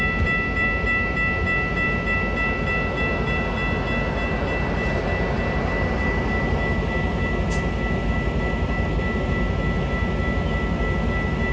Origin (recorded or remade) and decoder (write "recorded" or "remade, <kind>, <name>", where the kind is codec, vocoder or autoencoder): recorded